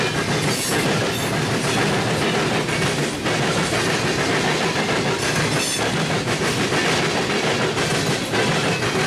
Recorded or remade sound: recorded